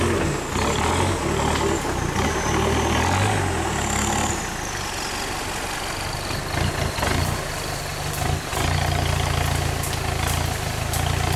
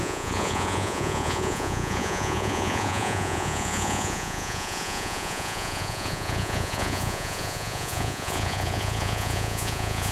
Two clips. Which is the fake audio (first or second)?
second